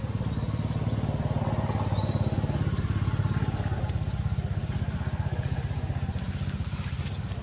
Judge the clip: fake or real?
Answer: real